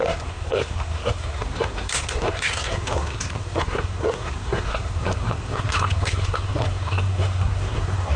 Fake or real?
fake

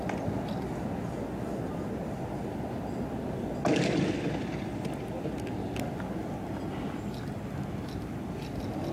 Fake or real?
real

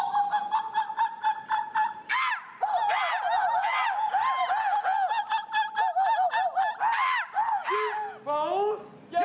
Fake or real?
real